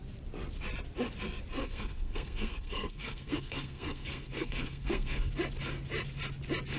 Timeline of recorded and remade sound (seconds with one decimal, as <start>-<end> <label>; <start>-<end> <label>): 0.0-1.6 recorded; 1.6-5.3 remade; 5.3-6.8 recorded